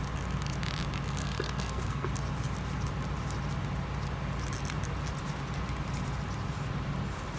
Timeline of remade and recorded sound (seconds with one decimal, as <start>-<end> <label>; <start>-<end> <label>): 0.0-1.2 recorded; 1.2-2.1 remade; 2.1-7.4 recorded